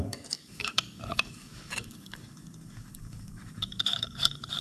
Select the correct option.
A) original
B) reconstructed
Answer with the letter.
B